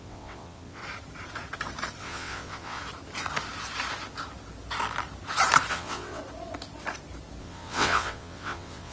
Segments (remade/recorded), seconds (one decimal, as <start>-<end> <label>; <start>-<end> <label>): 0.0-0.8 remade; 0.8-2.0 recorded; 2.0-2.8 remade; 2.8-5.7 recorded; 5.7-6.2 remade; 6.2-7.4 recorded; 7.4-8.9 remade